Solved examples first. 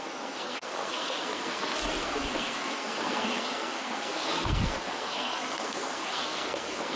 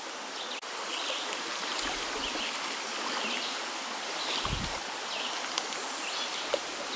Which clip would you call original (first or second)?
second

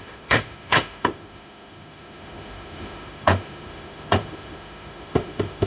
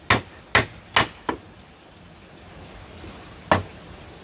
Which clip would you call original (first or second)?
second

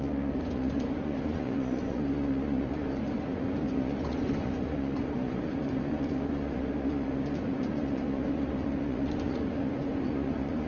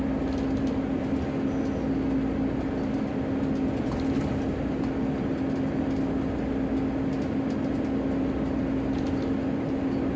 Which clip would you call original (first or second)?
second